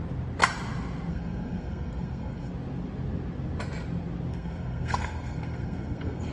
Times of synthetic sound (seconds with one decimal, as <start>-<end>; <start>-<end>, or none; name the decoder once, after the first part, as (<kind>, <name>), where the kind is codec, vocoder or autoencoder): 1.1-2.5 (codec, SNAC); 4.3-6.3